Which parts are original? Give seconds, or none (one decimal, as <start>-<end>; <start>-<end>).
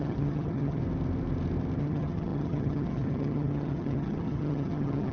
0.8-1.8